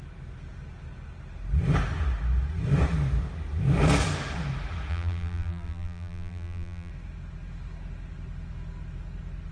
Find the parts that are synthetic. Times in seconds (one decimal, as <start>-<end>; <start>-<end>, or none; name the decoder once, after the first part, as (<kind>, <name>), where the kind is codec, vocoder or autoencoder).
4.9-6.9 (vocoder, BigVGAN v2)